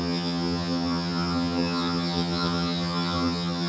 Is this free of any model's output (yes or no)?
no